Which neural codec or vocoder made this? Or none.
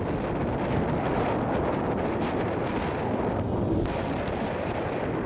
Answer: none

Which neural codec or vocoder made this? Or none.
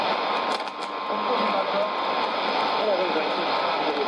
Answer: none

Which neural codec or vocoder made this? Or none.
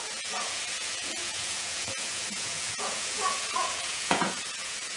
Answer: vocoder, Vocos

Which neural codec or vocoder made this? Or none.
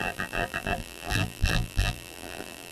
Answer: vocoder, BigVGAN v2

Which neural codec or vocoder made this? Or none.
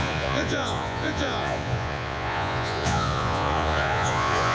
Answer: vocoder, Vocos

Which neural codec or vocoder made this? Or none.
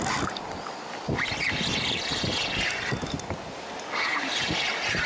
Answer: none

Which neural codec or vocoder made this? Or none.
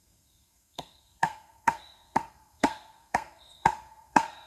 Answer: codec, SNAC